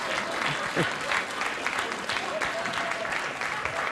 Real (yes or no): yes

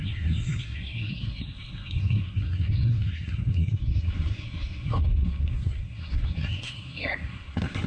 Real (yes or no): no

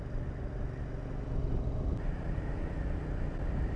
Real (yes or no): yes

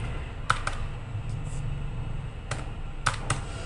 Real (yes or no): yes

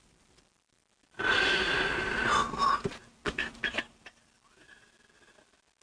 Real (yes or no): yes